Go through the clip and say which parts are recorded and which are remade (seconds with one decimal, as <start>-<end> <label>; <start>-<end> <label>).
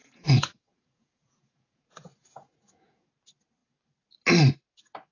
0.0-3.1 remade; 3.1-5.1 recorded